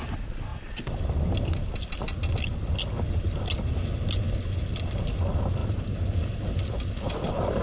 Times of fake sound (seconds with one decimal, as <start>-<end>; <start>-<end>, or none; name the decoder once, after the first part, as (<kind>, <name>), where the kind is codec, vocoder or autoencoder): 5.6-7.0 (vocoder, BigVGAN v2)